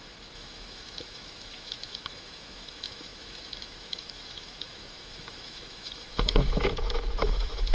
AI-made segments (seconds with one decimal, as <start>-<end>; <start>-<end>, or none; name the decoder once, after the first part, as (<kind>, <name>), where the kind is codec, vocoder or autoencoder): 0.0-7.7 (autoencoder, DAC-VAE)